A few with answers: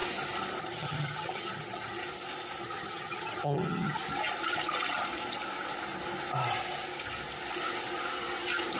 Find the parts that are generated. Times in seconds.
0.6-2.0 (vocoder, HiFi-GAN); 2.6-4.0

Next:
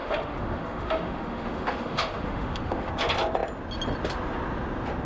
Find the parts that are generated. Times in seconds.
0.0-2.9 (autoencoder, DAC-VAE)